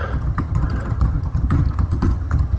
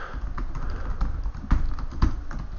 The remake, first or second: first